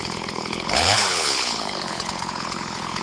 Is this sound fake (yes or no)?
yes